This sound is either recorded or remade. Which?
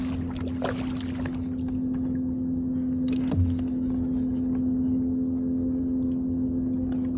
recorded